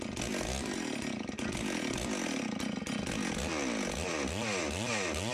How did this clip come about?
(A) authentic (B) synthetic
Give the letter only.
A